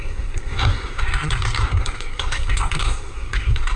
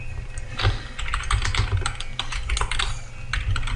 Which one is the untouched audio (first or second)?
second